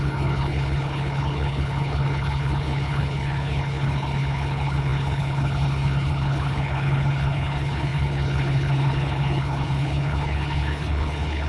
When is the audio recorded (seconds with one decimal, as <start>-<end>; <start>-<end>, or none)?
none

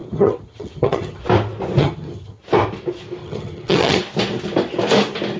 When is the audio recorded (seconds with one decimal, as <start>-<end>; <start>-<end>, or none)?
1.2-1.8; 2.4-3.2; 4.0-5.4

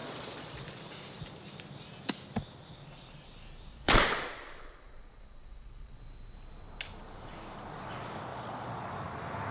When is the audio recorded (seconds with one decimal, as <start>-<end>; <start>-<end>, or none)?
0.6-3.7; 6.0-8.3; 8.9-9.5

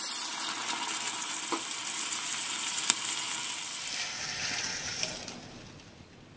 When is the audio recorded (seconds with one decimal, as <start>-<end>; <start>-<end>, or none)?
0.0-6.4